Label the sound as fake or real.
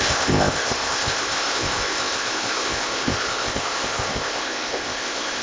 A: fake